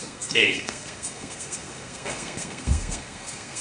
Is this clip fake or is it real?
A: fake